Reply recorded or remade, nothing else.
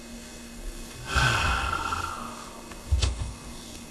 remade